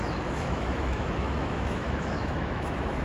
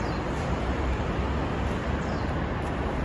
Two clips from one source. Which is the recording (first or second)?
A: second